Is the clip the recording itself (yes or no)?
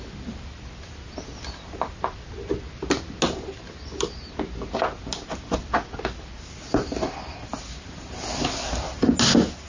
yes